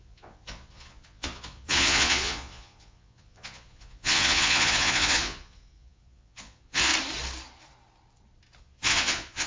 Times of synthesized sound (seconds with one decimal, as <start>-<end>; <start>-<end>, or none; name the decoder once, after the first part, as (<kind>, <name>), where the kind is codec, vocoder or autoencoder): 0.0-6.9 (vocoder, Vocos); 8.6-9.5

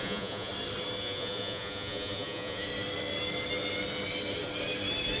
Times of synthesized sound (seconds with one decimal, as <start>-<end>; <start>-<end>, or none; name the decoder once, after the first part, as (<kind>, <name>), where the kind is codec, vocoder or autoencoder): 0.0-0.5 (vocoder, Vocos); 1.0-2.7

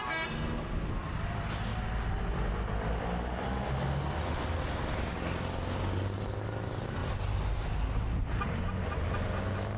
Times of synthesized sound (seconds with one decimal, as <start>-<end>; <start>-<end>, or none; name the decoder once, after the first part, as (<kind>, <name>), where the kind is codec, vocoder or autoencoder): none

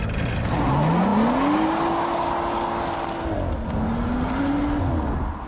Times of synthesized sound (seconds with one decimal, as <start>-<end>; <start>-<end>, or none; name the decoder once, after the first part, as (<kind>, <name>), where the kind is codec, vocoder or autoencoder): none

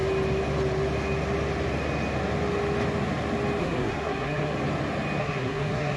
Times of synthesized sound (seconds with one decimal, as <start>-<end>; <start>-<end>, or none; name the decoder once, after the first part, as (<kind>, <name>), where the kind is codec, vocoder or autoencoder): 3.6-4.5 (codec, SNAC); 5.2-6.0

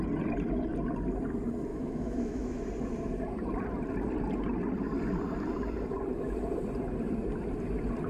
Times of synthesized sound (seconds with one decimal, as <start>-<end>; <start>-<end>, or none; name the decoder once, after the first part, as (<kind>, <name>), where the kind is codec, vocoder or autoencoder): 1.7-2.6 (autoencoder, DAC-VAE)